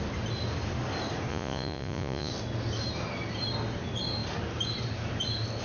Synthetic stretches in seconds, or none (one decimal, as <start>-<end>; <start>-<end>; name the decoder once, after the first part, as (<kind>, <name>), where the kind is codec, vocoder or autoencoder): 1.3-2.3 (vocoder, Vocos)